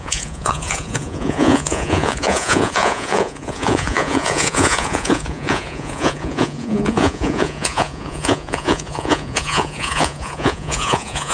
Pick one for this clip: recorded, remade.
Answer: remade